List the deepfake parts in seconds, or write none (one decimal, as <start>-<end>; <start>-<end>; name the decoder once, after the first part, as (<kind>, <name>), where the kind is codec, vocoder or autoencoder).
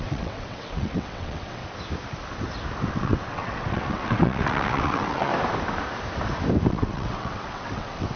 0.0-1.6 (vocoder, WaveNeXt); 2.9-5.3; 6.7-8.2